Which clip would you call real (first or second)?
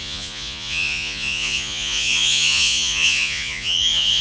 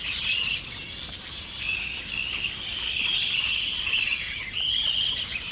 second